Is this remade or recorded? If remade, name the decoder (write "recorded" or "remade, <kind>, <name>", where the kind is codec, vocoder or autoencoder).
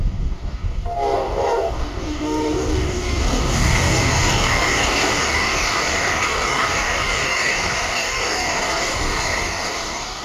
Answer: remade, codec, DAC